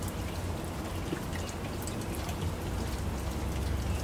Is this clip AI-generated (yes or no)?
no